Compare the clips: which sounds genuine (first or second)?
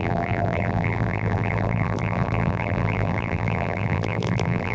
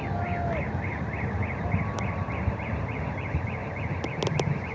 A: second